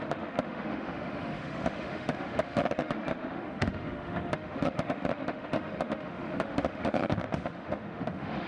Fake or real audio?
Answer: fake